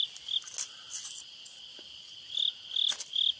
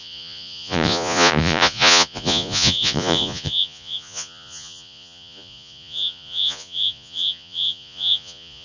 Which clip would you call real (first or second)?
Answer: first